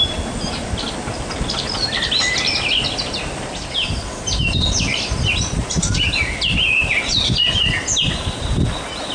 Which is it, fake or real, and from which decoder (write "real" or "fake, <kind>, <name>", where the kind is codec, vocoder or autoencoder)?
real